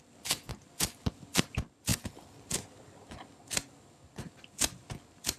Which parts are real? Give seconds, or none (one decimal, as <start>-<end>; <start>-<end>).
0.0-5.4